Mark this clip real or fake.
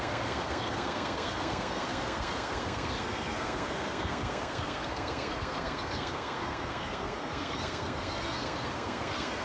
fake